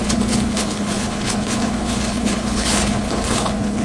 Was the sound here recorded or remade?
remade